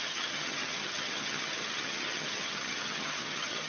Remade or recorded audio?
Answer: remade